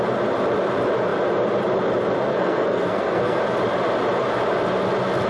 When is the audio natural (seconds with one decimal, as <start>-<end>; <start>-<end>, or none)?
0.0-2.3; 3.4-5.3